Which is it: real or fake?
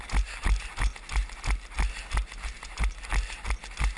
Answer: real